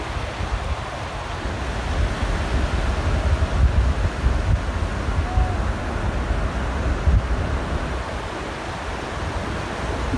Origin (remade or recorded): recorded